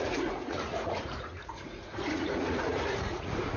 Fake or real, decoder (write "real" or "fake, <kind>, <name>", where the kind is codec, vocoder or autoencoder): fake, vocoder, Vocos